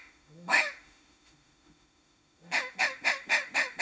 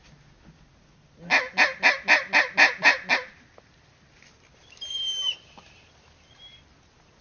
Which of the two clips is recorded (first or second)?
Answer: second